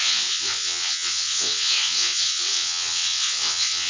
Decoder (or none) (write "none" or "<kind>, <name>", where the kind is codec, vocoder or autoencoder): vocoder, WaveNeXt